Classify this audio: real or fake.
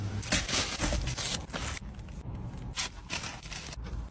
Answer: real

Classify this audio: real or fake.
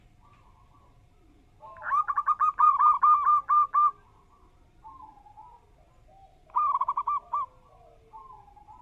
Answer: real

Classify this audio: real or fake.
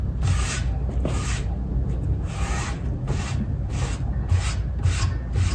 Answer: real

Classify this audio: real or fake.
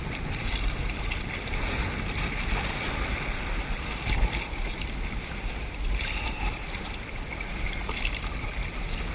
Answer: real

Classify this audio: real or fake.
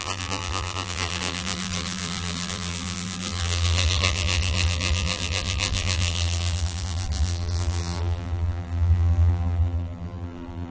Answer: fake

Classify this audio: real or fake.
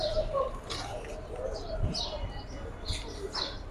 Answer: fake